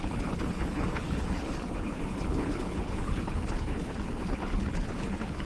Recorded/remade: remade